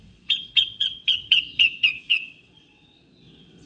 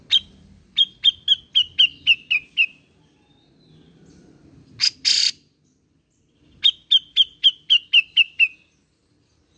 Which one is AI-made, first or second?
first